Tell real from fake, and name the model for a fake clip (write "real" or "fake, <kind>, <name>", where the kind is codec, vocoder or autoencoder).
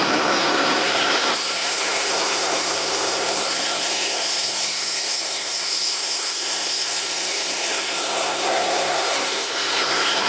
fake, codec, SNAC